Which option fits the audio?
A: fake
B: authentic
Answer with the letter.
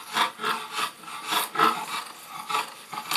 B